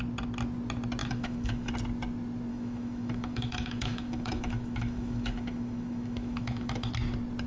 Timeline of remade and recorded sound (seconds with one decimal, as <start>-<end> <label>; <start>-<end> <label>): 0.0-1.0 recorded; 1.0-1.7 remade; 1.7-2.5 recorded; 2.5-6.9 remade; 6.9-7.5 recorded